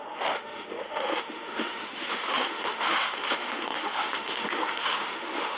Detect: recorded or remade remade